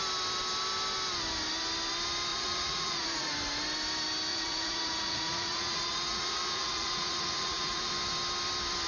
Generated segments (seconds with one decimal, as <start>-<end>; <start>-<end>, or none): 2.3-3.3; 4.3-7.9